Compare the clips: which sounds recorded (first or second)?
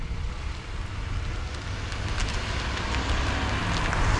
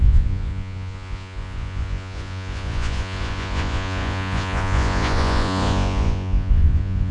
first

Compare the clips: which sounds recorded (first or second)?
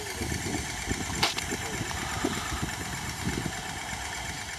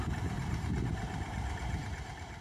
first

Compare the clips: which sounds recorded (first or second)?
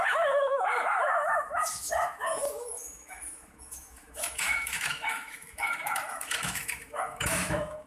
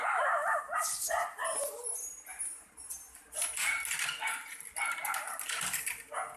second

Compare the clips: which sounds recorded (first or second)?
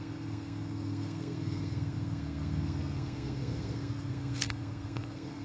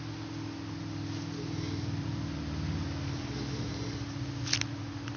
second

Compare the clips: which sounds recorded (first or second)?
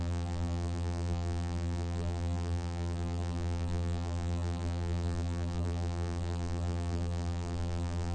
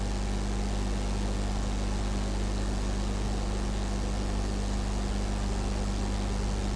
second